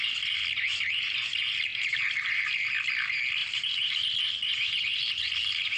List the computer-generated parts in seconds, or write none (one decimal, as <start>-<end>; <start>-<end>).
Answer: 3.4-3.9